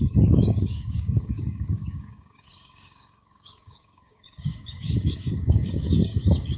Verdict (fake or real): fake